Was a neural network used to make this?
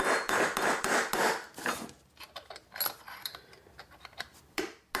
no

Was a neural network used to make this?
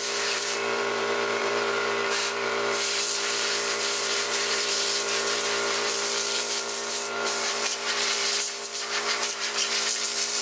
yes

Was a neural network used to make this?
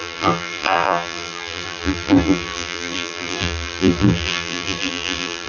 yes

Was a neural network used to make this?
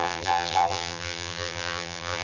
yes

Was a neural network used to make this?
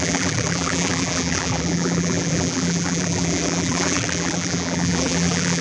yes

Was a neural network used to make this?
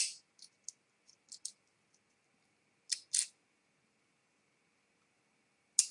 no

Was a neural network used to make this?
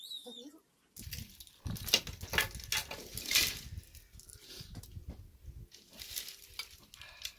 no